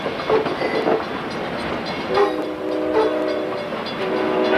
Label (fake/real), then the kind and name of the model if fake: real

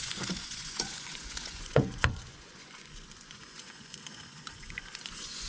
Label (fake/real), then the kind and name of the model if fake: fake, vocoder, Vocos